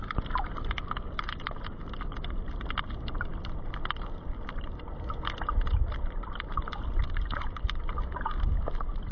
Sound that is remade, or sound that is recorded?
remade